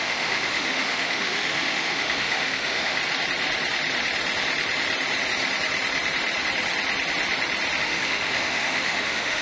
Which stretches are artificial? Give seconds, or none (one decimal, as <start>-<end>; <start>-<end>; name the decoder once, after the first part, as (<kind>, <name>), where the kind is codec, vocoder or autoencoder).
0.0-3.0 (autoencoder, DAC-VAE); 7.8-9.4